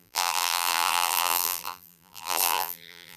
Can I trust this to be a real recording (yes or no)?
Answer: no